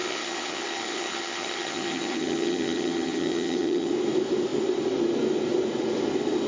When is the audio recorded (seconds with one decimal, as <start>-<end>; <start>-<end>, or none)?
3.9-6.5